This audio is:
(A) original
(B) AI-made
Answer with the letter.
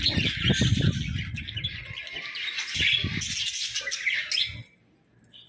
A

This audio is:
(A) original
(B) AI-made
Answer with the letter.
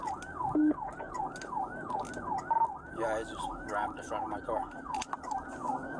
A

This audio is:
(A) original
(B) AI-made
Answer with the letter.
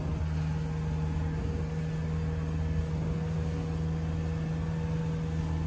A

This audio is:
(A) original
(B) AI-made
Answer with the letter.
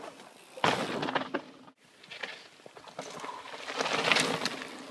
A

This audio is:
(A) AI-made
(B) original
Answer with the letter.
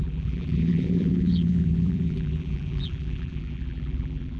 A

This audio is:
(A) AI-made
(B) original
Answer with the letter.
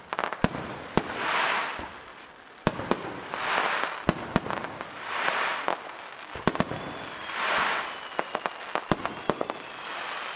A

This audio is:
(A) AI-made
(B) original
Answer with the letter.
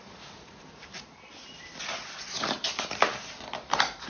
A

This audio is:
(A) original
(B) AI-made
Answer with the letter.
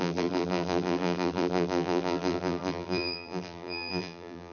B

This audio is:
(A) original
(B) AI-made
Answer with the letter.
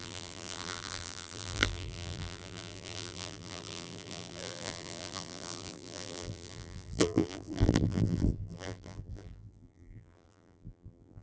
B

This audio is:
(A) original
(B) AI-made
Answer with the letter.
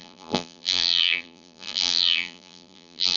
B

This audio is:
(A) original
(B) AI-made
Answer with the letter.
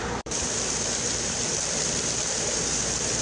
B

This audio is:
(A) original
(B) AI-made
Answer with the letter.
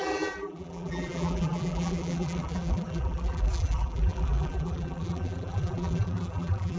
B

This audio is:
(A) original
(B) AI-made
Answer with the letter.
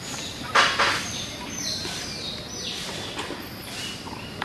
B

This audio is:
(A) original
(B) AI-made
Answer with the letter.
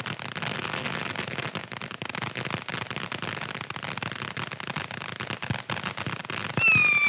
A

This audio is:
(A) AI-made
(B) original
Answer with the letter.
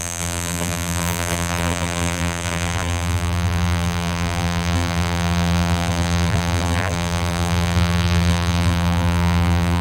A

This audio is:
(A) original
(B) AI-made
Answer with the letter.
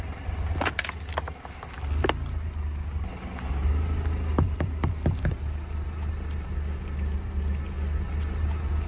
A